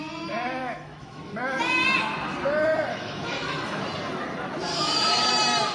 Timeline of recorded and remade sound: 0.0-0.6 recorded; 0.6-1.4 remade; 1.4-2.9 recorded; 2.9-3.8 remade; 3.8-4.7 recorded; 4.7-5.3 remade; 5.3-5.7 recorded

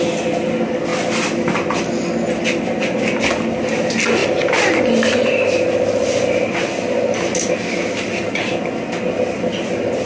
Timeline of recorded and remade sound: 0.0-10.1 recorded

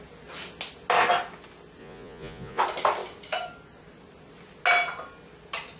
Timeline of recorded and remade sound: 0.0-1.8 recorded; 1.8-2.6 remade; 2.6-5.8 recorded